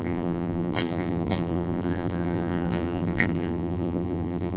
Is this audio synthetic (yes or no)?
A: yes